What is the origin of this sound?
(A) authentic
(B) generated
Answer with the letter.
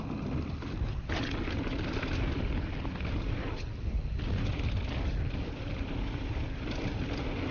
A